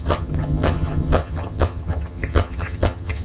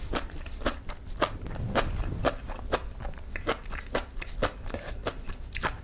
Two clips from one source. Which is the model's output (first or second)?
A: first